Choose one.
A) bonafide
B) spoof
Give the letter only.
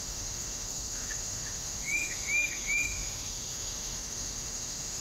B